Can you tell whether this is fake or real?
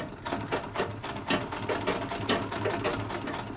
real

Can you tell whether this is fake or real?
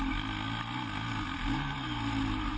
real